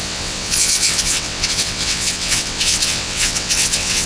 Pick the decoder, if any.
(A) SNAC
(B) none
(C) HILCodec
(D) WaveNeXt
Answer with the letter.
D